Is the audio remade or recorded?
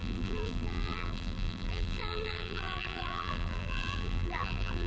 remade